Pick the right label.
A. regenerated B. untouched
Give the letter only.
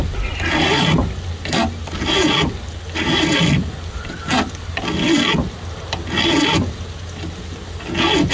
B